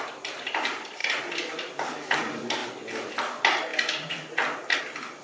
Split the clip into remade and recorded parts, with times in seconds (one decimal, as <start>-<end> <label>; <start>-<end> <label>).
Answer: 0.0-1.0 remade; 1.0-1.9 recorded; 1.9-2.6 remade; 2.6-3.1 recorded; 3.1-3.7 remade; 3.7-4.8 recorded; 4.8-5.2 remade